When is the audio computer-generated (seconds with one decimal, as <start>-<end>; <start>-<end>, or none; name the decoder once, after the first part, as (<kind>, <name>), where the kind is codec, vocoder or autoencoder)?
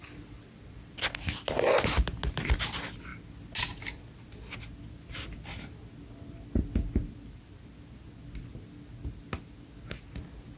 none